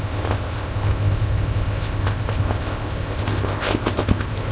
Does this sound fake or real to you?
fake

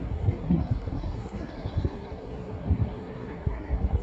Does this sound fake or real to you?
fake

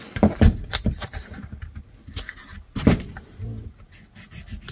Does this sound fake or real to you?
real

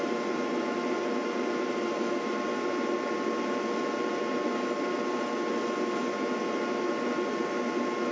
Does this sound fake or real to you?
real